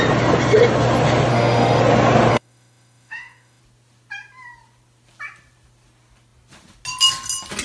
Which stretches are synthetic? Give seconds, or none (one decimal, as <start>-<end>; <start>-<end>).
1.3-1.8; 2.3-3.6